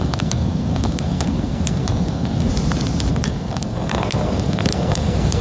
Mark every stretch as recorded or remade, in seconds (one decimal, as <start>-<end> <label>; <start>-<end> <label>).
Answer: 0.0-2.5 remade; 2.5-3.1 recorded; 3.1-5.4 remade